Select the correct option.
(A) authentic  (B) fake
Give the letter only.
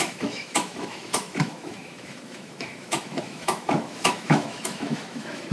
B